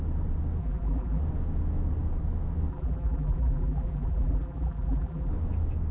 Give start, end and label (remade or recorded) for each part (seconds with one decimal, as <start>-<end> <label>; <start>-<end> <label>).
0.0-0.6 recorded; 0.6-1.2 remade; 1.2-2.7 recorded; 2.7-5.3 remade; 5.3-5.9 recorded